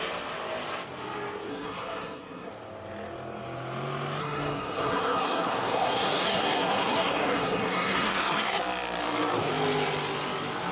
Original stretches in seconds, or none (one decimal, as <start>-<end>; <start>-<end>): 0.0-1.5; 2.5-4.2; 8.6-10.7